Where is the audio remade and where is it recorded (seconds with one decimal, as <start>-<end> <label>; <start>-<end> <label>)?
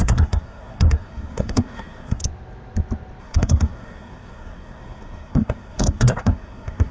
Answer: 0.0-2.2 remade; 2.2-3.2 recorded; 3.2-6.9 remade